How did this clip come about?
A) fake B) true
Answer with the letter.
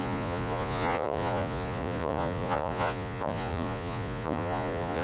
A